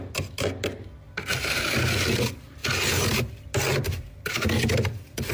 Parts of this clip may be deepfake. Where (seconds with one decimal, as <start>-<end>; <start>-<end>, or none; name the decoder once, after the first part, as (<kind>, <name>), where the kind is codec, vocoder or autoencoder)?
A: none